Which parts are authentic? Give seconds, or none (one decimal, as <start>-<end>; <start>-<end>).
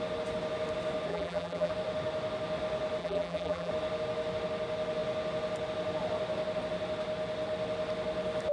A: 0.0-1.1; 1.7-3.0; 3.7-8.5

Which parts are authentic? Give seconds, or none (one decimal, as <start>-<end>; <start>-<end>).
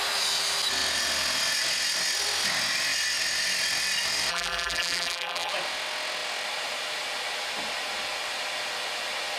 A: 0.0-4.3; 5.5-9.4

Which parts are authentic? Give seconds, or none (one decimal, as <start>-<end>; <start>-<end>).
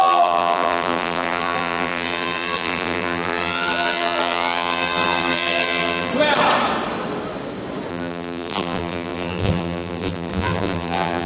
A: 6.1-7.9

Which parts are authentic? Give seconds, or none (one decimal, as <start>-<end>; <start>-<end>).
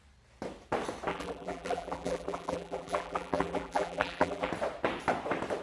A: 0.0-1.1; 4.5-5.6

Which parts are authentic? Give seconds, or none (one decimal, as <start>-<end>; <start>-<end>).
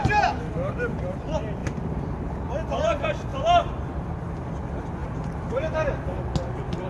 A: 0.0-5.0; 5.7-6.9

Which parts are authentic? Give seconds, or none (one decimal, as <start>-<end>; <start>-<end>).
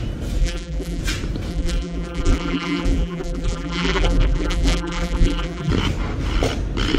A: 0.0-0.4; 1.0-1.5; 5.7-7.0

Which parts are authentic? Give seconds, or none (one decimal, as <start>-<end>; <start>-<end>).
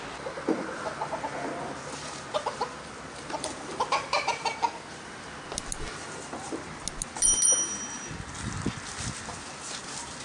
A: 0.0-10.2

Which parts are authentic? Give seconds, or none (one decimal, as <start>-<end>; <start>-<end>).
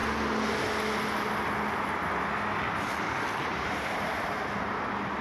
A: 0.0-3.5; 4.7-5.2